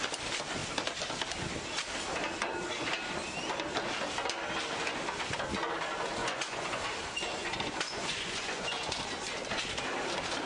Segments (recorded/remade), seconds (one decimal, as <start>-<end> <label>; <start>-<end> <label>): 0.0-6.2 recorded; 6.2-6.8 remade; 6.8-7.4 recorded; 7.4-9.0 remade; 9.0-10.5 recorded